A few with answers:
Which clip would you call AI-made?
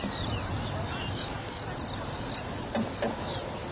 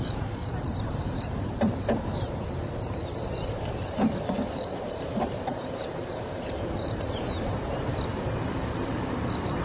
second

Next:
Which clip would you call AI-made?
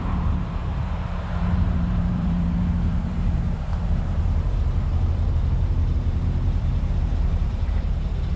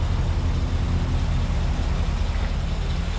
first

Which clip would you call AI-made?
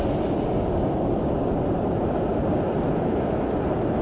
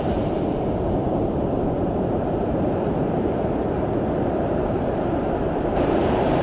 second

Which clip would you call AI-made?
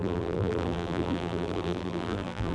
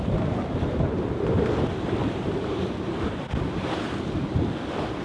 first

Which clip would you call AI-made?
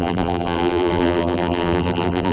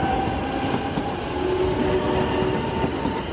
first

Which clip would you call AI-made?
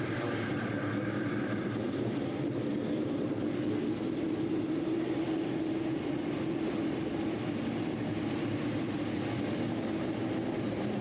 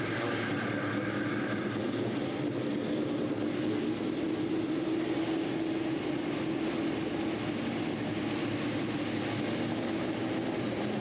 first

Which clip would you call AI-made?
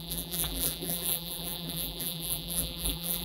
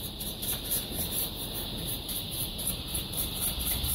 first